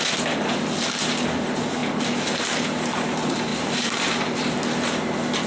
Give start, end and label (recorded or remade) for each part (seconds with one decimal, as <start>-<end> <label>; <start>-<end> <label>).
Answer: 0.0-3.5 recorded; 3.5-4.5 remade; 4.5-5.5 recorded